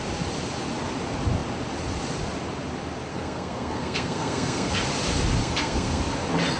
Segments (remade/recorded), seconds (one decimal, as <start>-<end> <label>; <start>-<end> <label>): 0.0-3.1 recorded; 3.1-4.7 remade; 4.7-5.4 recorded; 5.4-6.0 remade; 6.0-6.6 recorded